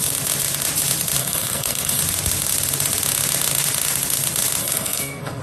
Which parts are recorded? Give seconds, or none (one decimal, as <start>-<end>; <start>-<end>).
0.0-1.2; 2.0-4.6